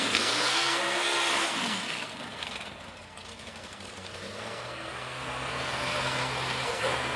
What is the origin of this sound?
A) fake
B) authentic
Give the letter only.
A